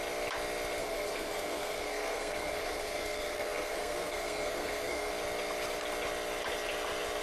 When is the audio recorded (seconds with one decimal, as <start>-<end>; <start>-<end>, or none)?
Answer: 0.0-0.8; 5.1-7.2